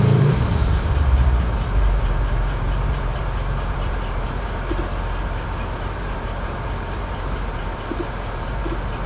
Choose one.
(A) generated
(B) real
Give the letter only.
A